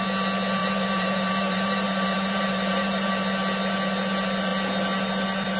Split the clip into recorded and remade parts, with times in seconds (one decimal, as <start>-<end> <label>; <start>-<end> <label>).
0.0-0.6 recorded; 0.6-3.1 remade; 3.1-5.6 recorded